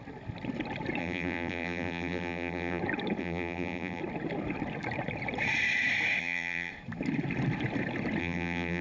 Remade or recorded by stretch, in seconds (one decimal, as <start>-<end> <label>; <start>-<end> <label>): 0.0-1.0 recorded; 1.0-2.8 remade; 2.8-3.2 recorded; 3.2-4.0 remade; 4.0-6.2 recorded; 6.2-6.7 remade; 6.7-8.2 recorded; 8.2-8.8 remade